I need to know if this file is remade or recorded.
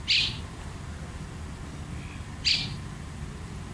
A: recorded